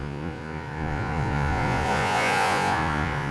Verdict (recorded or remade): remade